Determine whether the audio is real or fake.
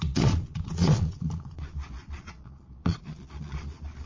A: fake